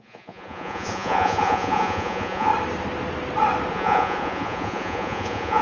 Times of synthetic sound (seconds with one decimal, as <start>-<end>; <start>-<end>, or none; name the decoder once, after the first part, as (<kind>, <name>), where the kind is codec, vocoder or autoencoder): 0.0-2.5 (vocoder, Vocos); 3.7-5.6